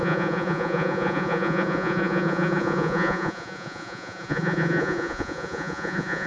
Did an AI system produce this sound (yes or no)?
yes